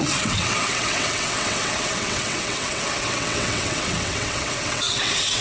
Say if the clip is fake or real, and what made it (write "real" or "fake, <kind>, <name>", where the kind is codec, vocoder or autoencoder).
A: fake, vocoder, WaveNeXt